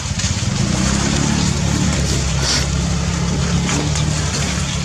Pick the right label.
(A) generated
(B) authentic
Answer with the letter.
B